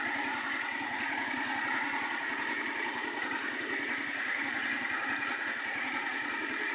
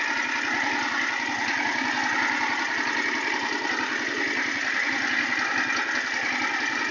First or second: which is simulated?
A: first